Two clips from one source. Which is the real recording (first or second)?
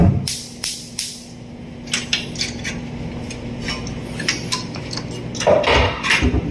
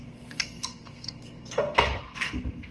first